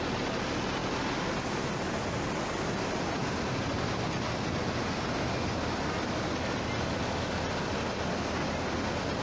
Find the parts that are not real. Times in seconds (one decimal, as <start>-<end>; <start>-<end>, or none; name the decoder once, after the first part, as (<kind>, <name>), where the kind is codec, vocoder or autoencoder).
none